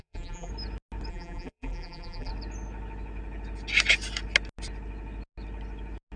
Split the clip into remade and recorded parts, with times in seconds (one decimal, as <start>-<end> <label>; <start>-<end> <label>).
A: 0.0-0.5 remade; 0.5-1.1 recorded; 1.1-2.3 remade; 2.3-6.2 recorded